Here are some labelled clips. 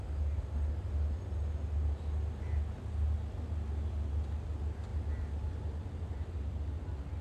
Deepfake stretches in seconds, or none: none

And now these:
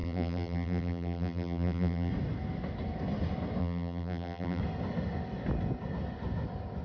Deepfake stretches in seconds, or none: 0.0-2.1 (vocoder, BigVGAN v2); 3.6-4.6

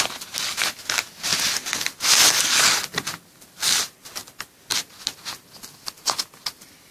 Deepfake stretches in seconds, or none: none

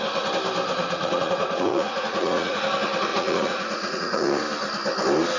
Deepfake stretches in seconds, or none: 0.7-2.6 (vocoder, Vocos); 3.1-4.4

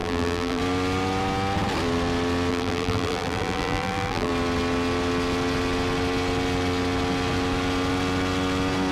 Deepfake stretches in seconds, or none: 0.0-0.6 (vocoder, BigVGAN v2); 2.5-4.3

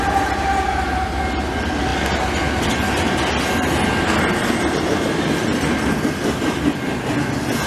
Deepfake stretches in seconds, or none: none